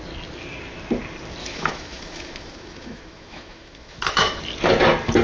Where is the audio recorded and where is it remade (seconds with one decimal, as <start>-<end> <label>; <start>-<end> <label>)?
0.0-1.4 recorded; 1.4-4.4 remade; 4.4-5.2 recorded